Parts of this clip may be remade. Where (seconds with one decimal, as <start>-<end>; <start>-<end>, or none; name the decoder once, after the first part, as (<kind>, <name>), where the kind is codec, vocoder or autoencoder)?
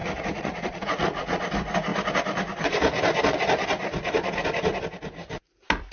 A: 0.0-1.4 (vocoder, Vocos)